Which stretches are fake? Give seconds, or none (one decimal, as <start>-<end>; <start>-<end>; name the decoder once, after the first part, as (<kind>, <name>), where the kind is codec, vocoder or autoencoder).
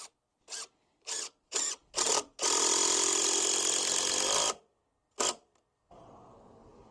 none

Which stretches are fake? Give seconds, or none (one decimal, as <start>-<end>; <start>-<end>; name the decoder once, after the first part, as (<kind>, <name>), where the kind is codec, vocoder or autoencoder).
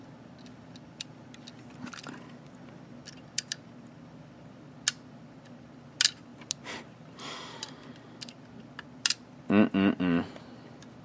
none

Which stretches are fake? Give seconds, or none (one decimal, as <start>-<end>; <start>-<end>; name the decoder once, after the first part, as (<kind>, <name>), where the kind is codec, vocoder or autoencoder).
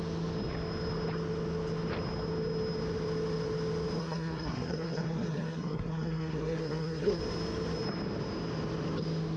4.0-7.2 (codec, SNAC)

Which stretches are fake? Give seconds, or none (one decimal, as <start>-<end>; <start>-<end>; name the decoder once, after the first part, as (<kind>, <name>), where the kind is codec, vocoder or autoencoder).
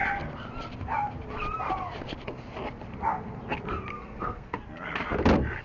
3.9-4.6 (codec, SNAC)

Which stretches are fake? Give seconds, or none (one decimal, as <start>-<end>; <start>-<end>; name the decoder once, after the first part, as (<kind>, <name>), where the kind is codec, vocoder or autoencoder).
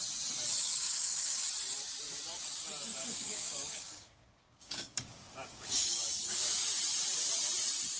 0.6-1.4 (codec, DAC); 2.9-6.7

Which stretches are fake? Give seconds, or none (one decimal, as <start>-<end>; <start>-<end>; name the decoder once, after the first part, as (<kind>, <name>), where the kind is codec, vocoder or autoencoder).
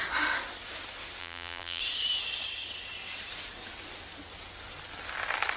1.2-1.8 (vocoder, BigVGAN v2)